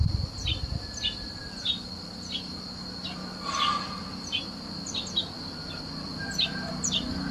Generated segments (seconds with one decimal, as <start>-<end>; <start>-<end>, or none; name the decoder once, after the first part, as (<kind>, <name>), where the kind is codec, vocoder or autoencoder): 1.4-4.4 (vocoder, BigVGAN v2)